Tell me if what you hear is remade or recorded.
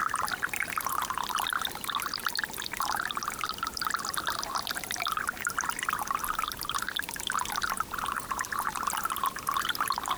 recorded